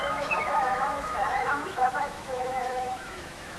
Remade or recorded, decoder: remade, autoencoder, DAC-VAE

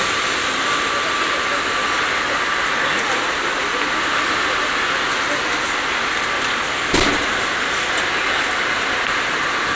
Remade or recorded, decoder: recorded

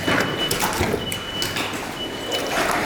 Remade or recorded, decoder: recorded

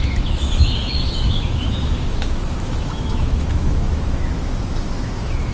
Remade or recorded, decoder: remade, autoencoder, DAC-VAE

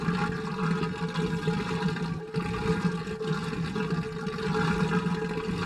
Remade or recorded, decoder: recorded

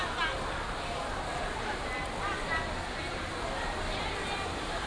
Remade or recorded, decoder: recorded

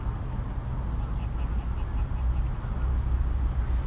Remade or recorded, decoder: recorded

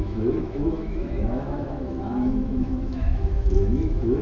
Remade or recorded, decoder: remade, autoencoder, DAC-VAE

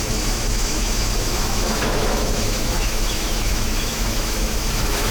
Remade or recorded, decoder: remade, autoencoder, DAC-VAE